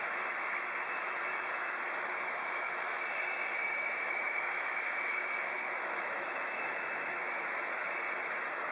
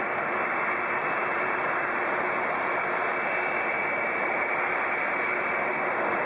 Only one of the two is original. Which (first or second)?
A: second